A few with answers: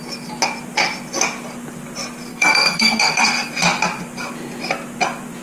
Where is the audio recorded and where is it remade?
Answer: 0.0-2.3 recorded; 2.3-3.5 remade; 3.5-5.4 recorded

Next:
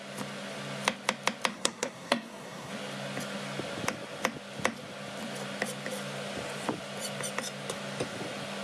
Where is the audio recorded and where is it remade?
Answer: 0.0-1.5 recorded; 1.5-2.7 remade; 2.7-8.6 recorded

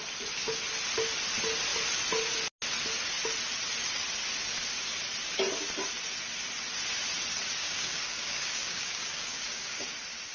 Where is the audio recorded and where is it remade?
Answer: 0.0-7.6 recorded; 7.6-9.9 remade; 9.9-10.3 recorded